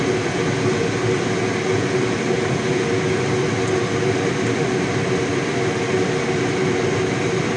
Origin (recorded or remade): recorded